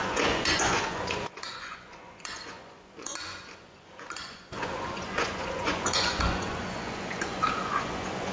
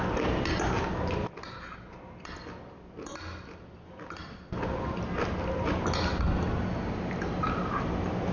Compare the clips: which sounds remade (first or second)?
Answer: first